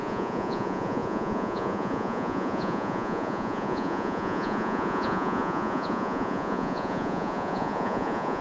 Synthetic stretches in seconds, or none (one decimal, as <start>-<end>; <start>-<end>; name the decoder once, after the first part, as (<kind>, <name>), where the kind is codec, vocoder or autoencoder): 0.0-8.4 (vocoder, Vocos)